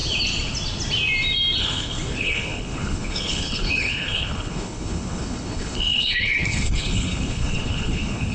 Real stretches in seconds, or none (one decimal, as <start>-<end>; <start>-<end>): 0.0-1.6

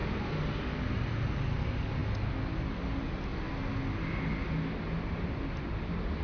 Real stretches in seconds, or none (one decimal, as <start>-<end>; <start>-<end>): 0.0-6.2

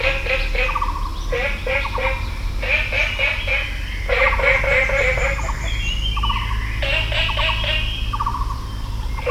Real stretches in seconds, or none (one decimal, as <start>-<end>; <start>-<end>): 0.0-8.3